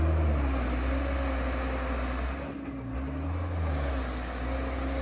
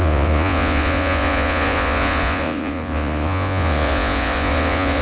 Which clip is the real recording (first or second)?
first